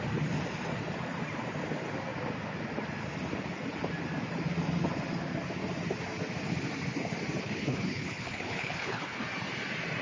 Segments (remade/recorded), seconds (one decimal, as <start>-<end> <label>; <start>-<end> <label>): 0.0-7.4 recorded; 7.4-9.2 remade; 9.2-10.0 recorded

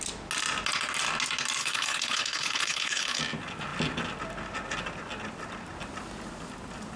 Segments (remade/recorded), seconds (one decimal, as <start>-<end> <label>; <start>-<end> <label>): 0.0-1.6 recorded; 1.6-3.2 remade; 3.2-7.0 recorded

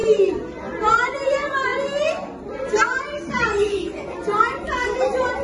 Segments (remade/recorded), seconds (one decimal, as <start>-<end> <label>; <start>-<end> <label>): 0.0-5.4 recorded

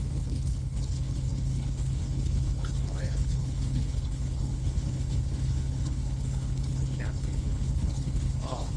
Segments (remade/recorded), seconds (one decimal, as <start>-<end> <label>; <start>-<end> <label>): 0.0-8.8 remade

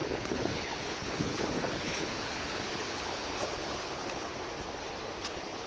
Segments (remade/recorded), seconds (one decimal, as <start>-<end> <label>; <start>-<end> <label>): 0.0-4.3 remade; 4.3-5.2 recorded; 5.2-5.7 remade

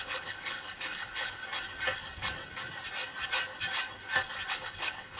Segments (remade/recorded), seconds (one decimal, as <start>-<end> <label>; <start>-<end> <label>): 0.0-1.4 remade; 1.4-4.5 recorded; 4.5-5.2 remade